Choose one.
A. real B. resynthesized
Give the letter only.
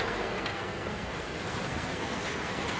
B